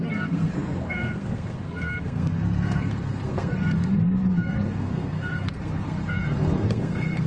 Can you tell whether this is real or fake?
fake